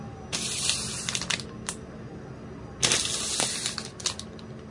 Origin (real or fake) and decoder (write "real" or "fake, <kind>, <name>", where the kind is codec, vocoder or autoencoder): real